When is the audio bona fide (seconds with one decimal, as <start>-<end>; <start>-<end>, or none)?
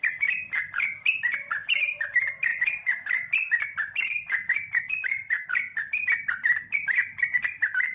0.0-7.9